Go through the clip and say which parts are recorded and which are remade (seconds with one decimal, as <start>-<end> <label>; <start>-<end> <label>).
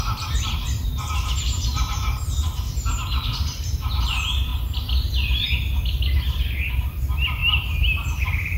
0.0-4.5 remade; 4.5-6.7 recorded; 6.7-8.6 remade